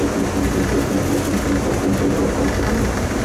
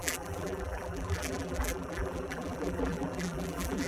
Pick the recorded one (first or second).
first